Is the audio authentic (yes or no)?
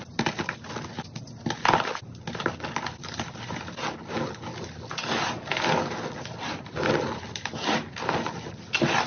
yes